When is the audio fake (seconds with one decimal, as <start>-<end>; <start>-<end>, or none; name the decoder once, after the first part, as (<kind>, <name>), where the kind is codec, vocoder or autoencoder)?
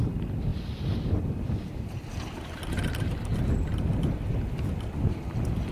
none